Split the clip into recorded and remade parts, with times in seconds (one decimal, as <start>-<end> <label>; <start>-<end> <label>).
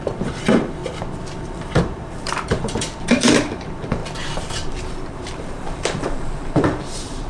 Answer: 0.0-0.8 remade; 0.8-1.4 recorded; 1.4-4.0 remade; 4.0-4.7 recorded; 4.7-7.3 remade